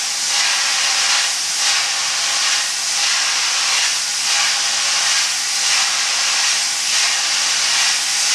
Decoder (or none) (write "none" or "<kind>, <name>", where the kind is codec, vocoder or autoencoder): none